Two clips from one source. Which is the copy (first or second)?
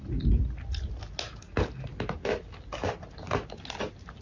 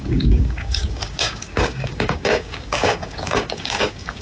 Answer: second